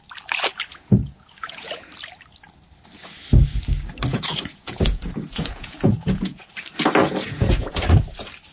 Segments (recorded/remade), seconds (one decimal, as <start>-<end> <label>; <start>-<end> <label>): 0.0-0.7 recorded; 0.7-1.9 remade; 1.9-4.1 recorded; 4.1-6.5 remade; 6.5-7.0 recorded; 7.0-7.8 remade; 7.8-8.5 recorded